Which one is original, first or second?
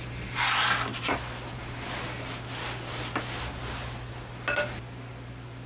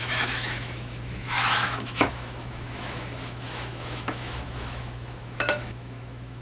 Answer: first